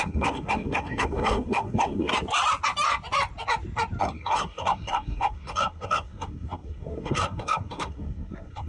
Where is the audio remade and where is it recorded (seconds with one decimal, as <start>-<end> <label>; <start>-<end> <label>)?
0.0-2.1 remade; 2.1-4.0 recorded; 4.0-8.7 remade